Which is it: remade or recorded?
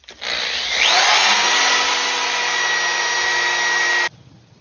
recorded